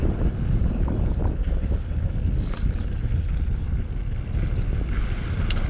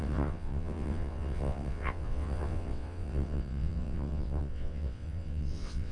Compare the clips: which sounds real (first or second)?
first